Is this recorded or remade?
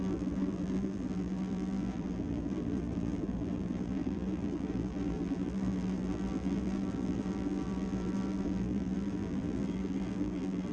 remade